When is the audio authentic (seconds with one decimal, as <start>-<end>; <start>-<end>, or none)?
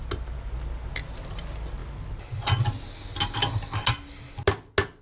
0.0-5.0